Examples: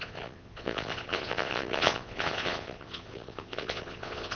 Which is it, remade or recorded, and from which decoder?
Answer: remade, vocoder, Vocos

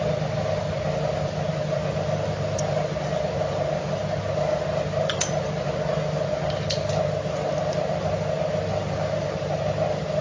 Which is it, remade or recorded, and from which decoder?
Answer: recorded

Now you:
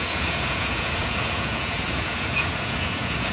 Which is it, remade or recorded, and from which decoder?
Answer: remade, vocoder, Vocos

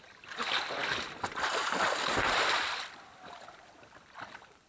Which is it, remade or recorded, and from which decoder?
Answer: recorded